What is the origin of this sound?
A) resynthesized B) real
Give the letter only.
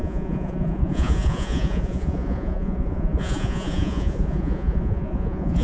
A